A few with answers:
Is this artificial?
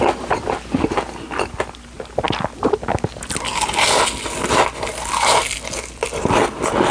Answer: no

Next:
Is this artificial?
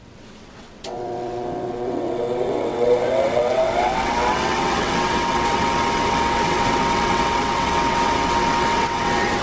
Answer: yes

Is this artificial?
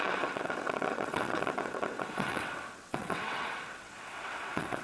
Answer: yes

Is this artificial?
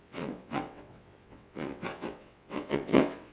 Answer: yes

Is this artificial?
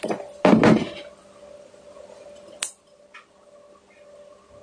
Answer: no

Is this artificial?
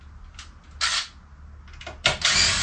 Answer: no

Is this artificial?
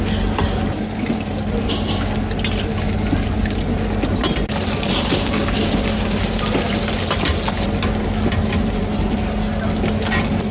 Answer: no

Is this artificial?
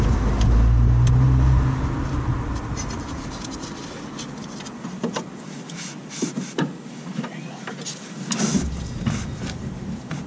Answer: no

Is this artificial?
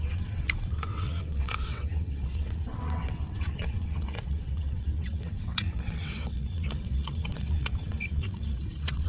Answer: yes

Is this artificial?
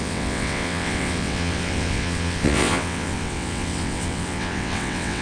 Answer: yes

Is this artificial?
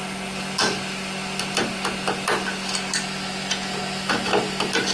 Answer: no